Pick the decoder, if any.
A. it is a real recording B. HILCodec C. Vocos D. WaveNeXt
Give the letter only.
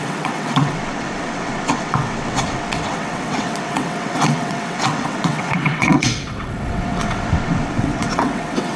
D